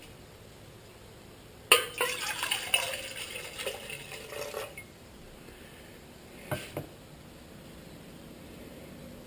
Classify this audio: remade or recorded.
recorded